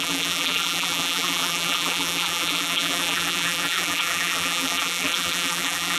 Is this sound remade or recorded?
remade